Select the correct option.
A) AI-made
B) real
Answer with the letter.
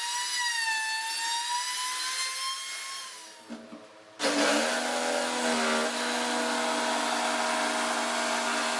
B